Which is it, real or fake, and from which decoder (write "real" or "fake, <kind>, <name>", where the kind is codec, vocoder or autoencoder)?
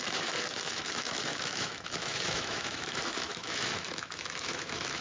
fake, autoencoder, DAC-VAE